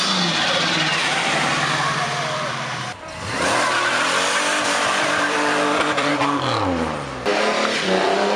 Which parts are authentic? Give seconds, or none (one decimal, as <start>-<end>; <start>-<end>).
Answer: 0.0-1.5; 6.1-7.3